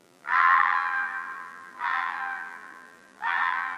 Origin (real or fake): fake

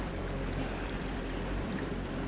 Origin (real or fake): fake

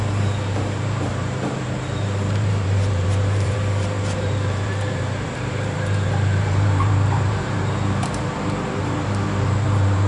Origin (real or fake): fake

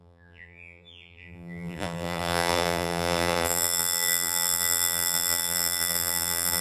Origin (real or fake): fake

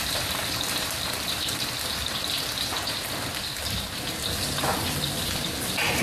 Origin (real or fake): fake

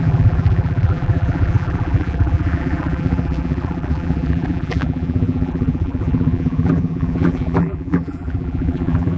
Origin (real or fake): fake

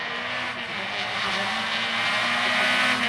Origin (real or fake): real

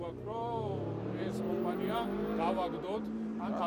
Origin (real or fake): real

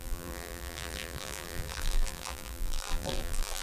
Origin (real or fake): fake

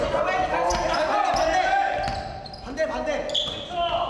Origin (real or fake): real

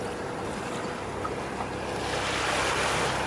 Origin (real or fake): real